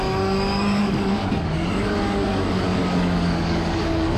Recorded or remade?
remade